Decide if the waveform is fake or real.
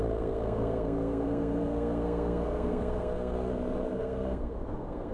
fake